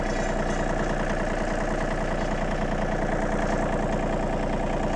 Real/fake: real